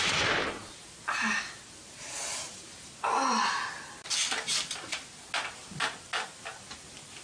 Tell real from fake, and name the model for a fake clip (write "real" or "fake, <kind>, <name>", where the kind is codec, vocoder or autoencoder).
real